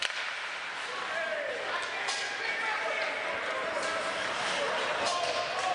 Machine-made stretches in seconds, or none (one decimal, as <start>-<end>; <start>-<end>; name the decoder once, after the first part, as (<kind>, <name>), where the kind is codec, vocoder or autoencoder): none